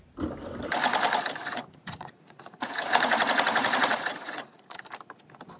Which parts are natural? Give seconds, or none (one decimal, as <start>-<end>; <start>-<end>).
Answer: 0.0-1.4; 4.8-5.6